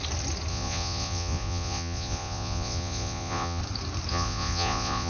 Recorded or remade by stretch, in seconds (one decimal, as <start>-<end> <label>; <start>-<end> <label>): 0.0-0.5 recorded; 0.5-3.6 remade; 3.6-4.1 recorded; 4.1-5.1 remade